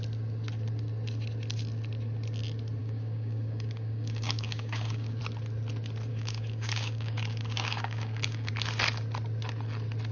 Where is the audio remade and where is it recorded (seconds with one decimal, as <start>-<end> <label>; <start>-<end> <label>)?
0.0-2.8 recorded; 2.8-5.2 remade; 5.2-6.1 recorded; 6.1-8.5 remade; 8.5-10.1 recorded